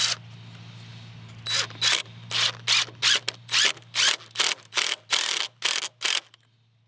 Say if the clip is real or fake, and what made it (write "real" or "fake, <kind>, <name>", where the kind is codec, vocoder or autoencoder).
real